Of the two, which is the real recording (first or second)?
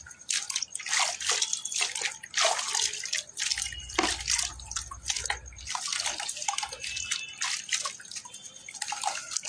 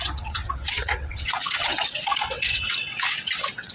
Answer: first